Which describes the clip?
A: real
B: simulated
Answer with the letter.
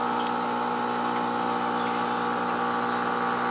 A